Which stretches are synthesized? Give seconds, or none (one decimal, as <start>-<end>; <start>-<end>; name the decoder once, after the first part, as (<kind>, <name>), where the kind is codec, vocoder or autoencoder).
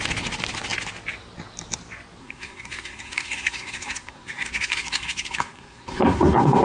2.2-6.6 (codec, SNAC)